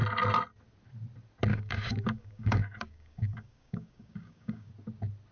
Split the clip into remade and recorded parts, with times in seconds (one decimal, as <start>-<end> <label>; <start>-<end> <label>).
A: 0.0-1.5 recorded; 1.5-4.7 remade; 4.7-5.3 recorded